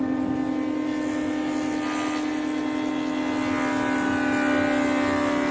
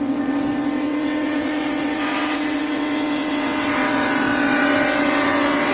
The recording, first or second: first